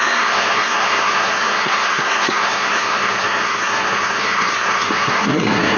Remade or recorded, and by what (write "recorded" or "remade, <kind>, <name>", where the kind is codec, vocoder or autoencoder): remade, codec, SNAC